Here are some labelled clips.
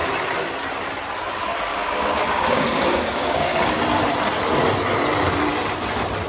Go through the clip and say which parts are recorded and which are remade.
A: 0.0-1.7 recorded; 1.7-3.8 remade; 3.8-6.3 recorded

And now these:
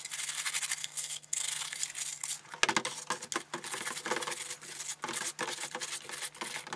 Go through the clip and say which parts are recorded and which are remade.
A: 0.0-0.8 recorded; 0.8-1.6 remade; 1.6-6.8 recorded

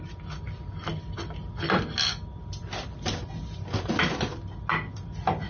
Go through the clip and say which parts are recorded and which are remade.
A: 0.0-5.5 recorded